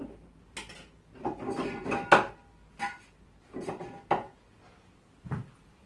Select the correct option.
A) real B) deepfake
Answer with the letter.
A